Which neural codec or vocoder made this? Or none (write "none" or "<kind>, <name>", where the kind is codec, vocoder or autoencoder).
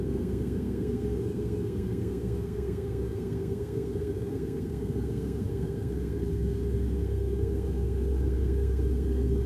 codec, SNAC